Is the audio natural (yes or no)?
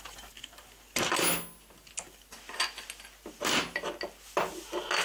yes